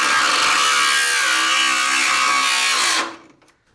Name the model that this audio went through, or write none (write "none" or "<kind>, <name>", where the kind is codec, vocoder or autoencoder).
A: none